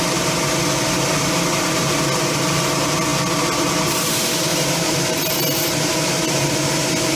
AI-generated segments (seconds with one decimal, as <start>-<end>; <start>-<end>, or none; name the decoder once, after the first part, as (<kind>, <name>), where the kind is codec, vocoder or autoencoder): 4.5-5.2 (vocoder, BigVGAN v2)